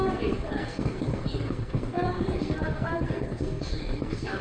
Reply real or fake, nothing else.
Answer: fake